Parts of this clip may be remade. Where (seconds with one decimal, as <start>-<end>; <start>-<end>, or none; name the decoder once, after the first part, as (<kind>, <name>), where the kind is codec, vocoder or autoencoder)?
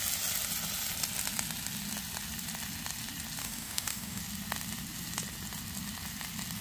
3.4-4.2 (codec, DAC)